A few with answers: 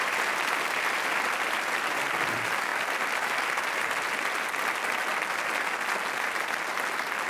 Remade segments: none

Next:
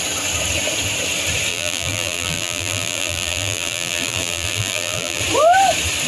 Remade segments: 1.5-5.2

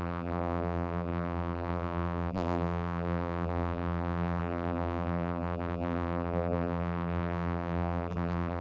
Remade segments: 0.0-8.6

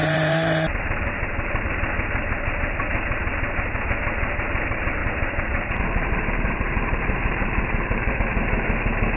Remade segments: 0.0-1.7; 2.2-2.8; 5.0-8.1

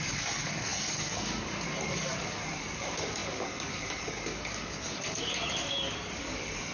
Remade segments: 0.0-6.7